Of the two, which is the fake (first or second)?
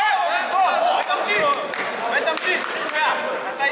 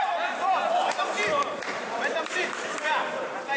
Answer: second